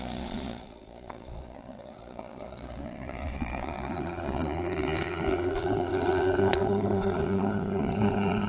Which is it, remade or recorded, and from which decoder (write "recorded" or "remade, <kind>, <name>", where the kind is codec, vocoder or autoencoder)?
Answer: remade, vocoder, Vocos